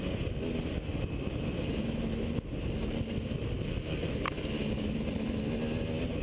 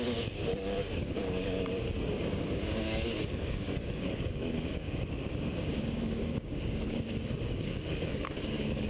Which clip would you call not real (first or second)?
second